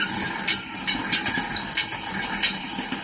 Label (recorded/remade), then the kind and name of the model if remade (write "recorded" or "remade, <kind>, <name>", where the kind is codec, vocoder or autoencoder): recorded